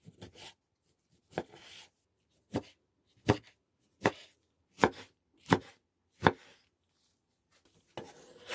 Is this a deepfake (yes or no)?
no